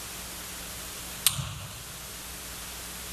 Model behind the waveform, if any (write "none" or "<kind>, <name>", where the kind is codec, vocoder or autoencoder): none